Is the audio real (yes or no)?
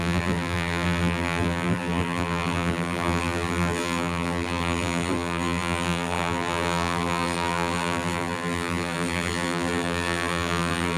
no